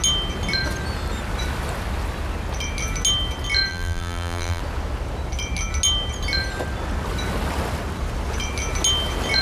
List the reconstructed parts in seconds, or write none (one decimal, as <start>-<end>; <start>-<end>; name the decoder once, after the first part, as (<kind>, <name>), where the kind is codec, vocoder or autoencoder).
3.7-4.6 (vocoder, BigVGAN v2)